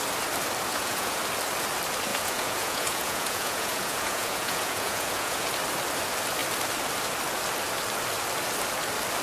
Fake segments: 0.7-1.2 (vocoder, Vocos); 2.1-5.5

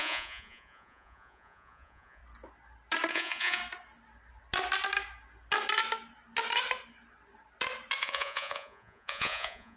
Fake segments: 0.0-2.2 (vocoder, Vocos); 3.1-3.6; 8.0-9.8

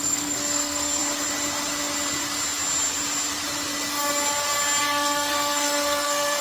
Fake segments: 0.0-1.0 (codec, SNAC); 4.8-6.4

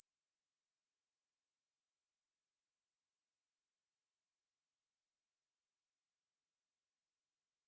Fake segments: 2.0-2.9 (autoencoder, DAC-VAE); 4.8-5.9; 7.0-7.7

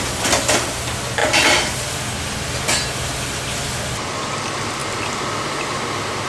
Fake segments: none

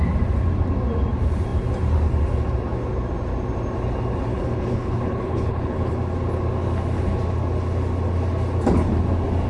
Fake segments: 4.3-5.9 (codec, HILCodec)